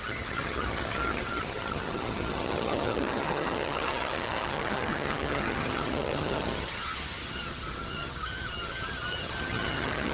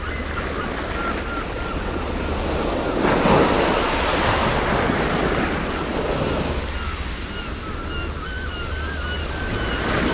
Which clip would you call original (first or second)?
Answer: second